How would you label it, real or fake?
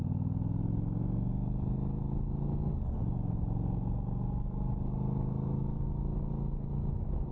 real